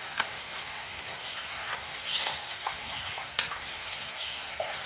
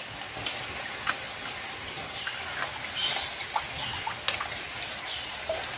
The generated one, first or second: first